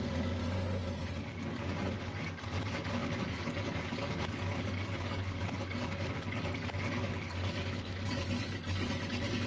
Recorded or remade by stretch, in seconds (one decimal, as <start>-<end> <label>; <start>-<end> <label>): 0.0-0.4 remade; 0.4-1.3 recorded; 1.3-9.5 remade